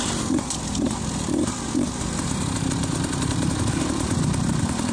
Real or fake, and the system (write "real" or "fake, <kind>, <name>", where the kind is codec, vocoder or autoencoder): fake, vocoder, BigVGAN v2